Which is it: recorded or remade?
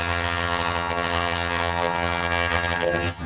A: remade